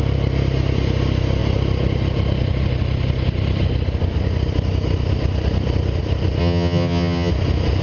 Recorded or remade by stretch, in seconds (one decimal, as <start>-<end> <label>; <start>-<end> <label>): 0.0-6.4 recorded; 6.4-7.3 remade; 7.3-7.8 recorded